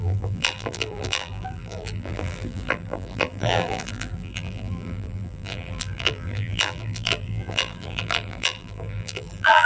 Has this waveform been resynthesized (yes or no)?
yes